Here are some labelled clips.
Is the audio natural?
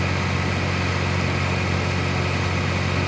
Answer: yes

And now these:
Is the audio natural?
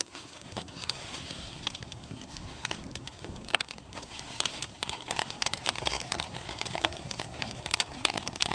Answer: no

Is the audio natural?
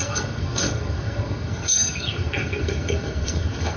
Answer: no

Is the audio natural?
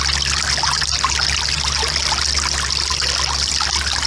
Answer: yes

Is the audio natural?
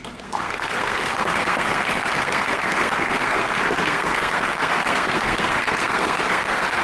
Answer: no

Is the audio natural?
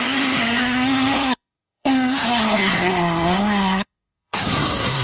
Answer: no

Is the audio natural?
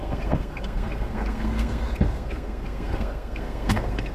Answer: no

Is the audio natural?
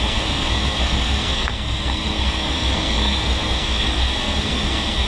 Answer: no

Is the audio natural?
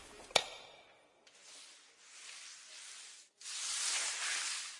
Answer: yes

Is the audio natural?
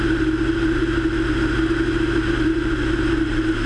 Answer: yes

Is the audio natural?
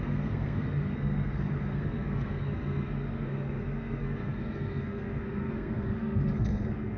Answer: no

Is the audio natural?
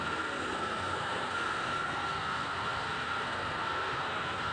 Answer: no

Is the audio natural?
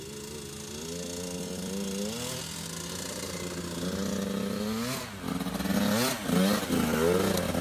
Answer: yes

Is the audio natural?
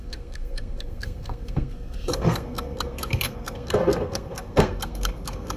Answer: no